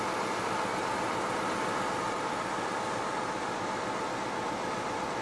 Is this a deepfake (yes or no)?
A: no